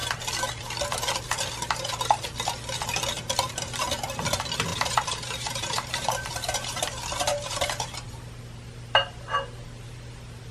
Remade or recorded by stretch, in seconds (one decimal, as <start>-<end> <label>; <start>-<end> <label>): 0.0-4.7 recorded; 4.7-8.1 remade; 8.1-10.5 recorded